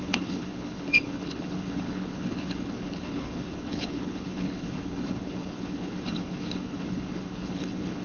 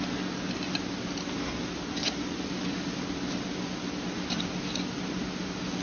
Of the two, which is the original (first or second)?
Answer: second